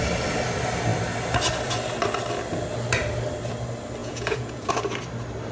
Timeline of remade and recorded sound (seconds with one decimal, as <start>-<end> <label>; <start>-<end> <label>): 0.0-4.0 recorded; 4.0-4.7 remade; 4.7-5.5 recorded